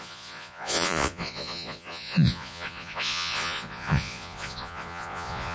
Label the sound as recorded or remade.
remade